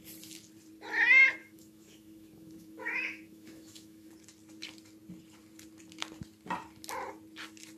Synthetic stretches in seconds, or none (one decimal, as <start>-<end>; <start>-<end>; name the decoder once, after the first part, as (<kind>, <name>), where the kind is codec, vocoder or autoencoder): 1.4-4.1 (autoencoder, DAC-VAE)